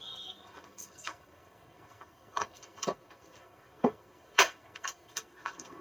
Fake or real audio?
fake